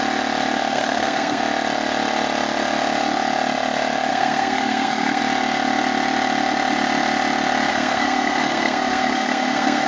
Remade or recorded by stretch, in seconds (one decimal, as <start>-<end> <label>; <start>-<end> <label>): 0.0-0.7 recorded; 0.7-1.4 remade; 1.4-4.1 recorded; 4.1-5.2 remade; 5.2-7.7 recorded; 7.7-9.9 remade